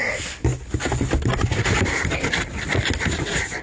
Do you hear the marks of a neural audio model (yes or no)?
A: no